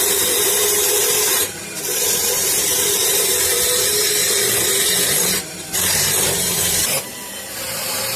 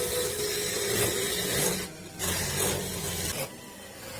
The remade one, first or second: first